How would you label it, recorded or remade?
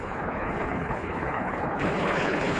remade